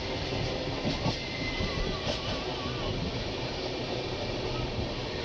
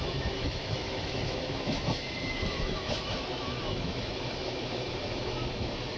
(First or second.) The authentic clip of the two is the first